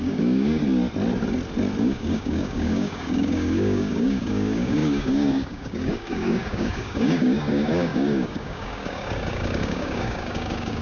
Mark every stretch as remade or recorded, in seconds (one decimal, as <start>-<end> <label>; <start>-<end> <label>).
0.0-0.6 remade; 0.6-1.8 recorded; 1.8-10.8 remade